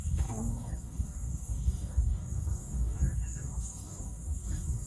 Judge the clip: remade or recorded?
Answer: remade